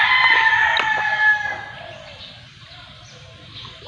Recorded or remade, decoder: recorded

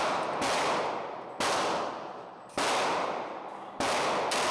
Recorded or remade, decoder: recorded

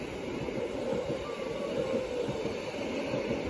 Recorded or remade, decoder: recorded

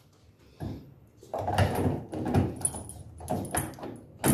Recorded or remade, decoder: recorded